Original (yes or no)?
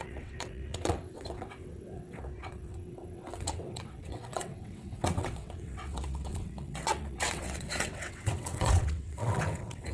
no